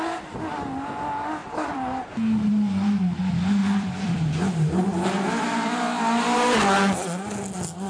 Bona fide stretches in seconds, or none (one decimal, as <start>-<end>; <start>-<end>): 0.0-1.4; 2.1-3.6; 5.8-7.9